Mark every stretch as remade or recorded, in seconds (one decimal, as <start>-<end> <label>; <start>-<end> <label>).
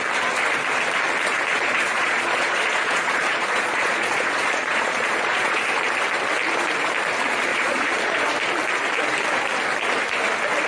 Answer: 0.0-1.5 recorded; 1.5-5.7 remade; 5.7-7.5 recorded; 7.5-8.2 remade; 8.2-10.7 recorded